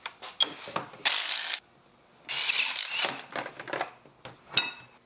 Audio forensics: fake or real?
real